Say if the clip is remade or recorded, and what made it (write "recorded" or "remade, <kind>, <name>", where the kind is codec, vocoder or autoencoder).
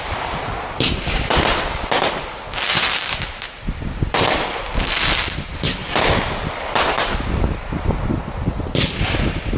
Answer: remade, vocoder, BigVGAN v2